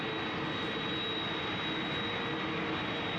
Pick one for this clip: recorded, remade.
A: recorded